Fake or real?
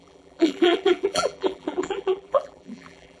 fake